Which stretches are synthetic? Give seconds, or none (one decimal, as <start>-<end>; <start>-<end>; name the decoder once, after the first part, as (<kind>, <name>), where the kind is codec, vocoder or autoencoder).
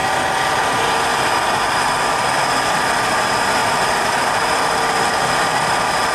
3.6-4.3 (vocoder, BigVGAN v2)